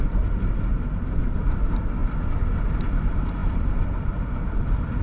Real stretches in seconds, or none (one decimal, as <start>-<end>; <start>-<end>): 0.0-0.7; 1.6-2.0; 2.6-5.0